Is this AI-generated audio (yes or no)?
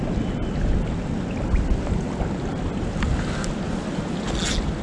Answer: no